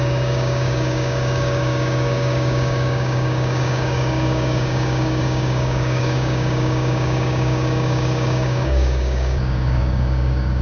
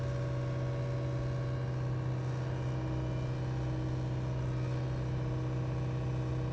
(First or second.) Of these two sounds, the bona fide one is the second